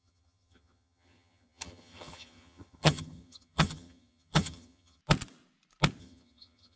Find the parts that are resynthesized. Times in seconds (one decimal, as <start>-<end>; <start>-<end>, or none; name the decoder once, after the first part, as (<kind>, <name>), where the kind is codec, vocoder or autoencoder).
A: 0.0-5.0 (vocoder, HiFi-GAN); 6.0-6.8